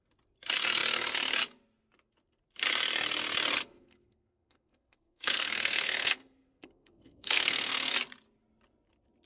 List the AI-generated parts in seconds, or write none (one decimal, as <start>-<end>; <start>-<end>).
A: 3.7-7.9